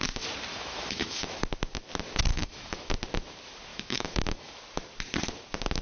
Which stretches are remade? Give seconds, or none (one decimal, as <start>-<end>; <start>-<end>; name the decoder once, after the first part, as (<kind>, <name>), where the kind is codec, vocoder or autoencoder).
0.5-1.3 (autoencoder, DAC-VAE); 2.3-2.9; 3.7-4.5